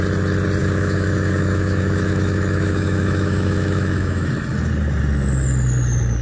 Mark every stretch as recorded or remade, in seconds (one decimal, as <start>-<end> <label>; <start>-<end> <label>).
0.0-0.6 recorded; 0.6-4.3 remade; 4.3-6.2 recorded